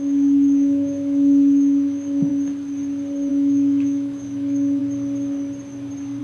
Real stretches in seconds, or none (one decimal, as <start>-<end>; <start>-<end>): 2.3-3.3; 4.8-6.2